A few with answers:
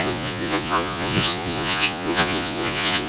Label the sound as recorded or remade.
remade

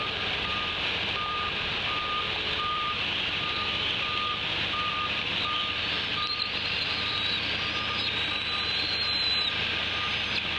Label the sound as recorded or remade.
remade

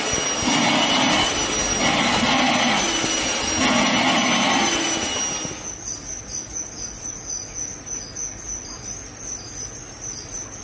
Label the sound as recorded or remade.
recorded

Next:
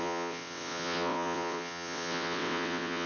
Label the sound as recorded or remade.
remade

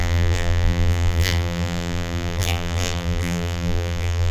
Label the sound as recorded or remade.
remade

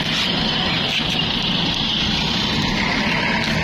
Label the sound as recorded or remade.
recorded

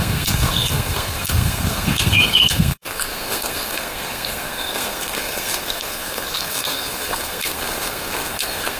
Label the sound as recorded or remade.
remade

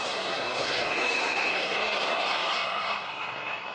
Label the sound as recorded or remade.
remade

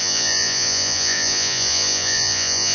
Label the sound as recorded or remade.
remade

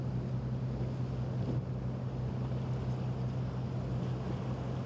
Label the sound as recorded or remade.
recorded